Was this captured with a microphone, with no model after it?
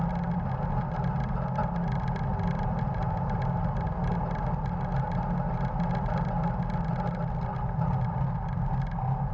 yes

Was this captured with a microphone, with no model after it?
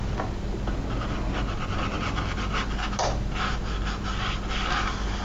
yes